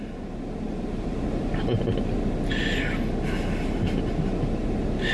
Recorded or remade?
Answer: recorded